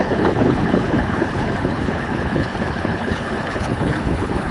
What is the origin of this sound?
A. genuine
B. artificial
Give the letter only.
B